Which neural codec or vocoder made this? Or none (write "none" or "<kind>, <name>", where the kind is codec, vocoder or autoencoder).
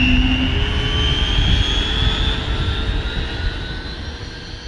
none